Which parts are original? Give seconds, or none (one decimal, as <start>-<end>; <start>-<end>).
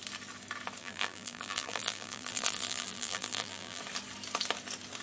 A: 0.0-0.8; 3.8-5.0